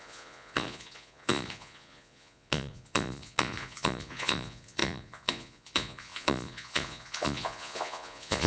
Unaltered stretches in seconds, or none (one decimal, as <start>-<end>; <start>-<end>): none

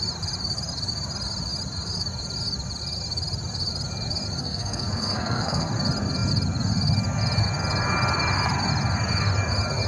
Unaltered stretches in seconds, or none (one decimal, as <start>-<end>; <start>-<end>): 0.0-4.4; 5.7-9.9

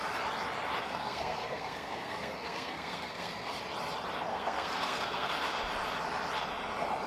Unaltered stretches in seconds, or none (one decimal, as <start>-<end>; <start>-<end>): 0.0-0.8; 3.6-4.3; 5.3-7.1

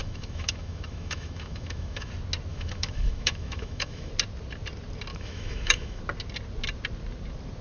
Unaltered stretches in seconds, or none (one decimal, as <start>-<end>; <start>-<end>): 2.1-2.5; 4.1-5.1; 6.0-7.6